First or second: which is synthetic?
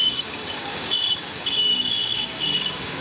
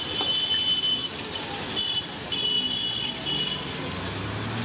first